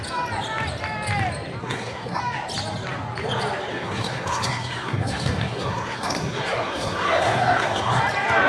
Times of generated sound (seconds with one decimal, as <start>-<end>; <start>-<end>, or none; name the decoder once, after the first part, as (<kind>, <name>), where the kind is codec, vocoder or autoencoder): 1.6-2.2 (codec, SNAC); 3.7-8.0